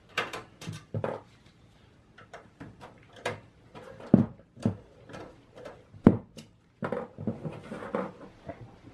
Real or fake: fake